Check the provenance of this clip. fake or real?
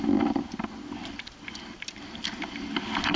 real